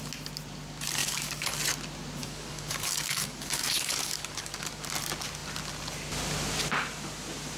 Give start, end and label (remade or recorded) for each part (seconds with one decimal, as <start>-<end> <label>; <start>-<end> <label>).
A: 0.0-1.0 recorded; 1.0-1.5 remade; 1.5-2.2 recorded; 2.2-4.7 remade; 4.7-7.6 recorded